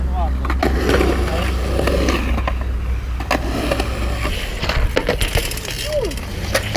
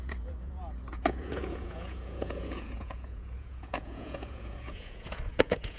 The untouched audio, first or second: first